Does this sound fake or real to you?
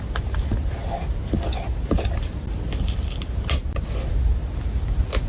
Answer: real